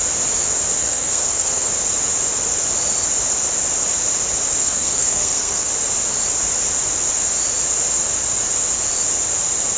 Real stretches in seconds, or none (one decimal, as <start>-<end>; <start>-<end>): 0.0-0.8; 1.7-4.6; 5.7-9.8